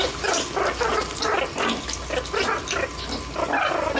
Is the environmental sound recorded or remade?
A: recorded